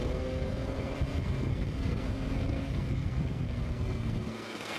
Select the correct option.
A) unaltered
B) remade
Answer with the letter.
B